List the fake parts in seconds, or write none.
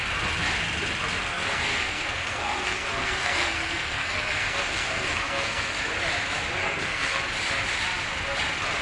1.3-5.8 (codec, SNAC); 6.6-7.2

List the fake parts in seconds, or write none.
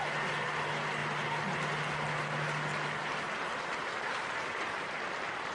none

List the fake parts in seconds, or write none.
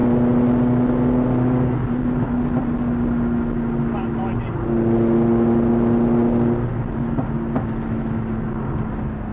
none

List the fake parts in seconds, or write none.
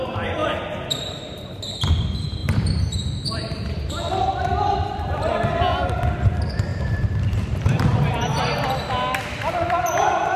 0.4-1.8 (vocoder, BigVGAN v2); 2.4-3.9; 6.7-8.9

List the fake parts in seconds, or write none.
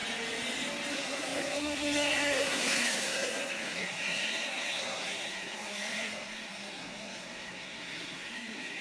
0.9-8.8 (codec, SNAC)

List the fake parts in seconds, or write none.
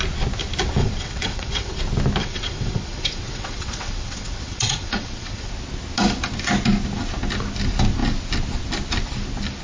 0.8-1.8 (vocoder, WaveNeXt); 2.2-5.5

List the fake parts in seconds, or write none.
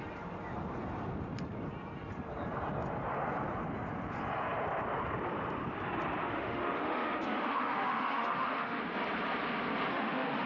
6.2-8.8 (autoencoder, DAC-VAE); 9.9-10.5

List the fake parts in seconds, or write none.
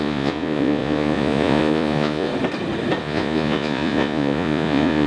0.0-2.3 (vocoder, Vocos); 3.0-5.1